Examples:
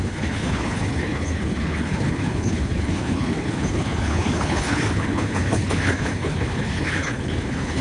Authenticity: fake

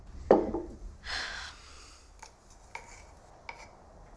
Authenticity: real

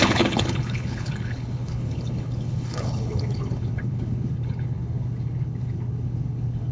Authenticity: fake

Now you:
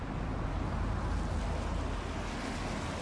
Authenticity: real